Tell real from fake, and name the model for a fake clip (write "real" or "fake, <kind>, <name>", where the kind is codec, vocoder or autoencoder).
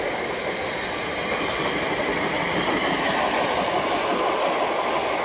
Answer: real